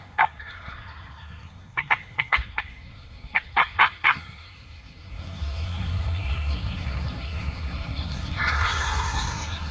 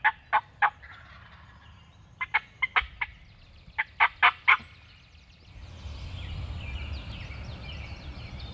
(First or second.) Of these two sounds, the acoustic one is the second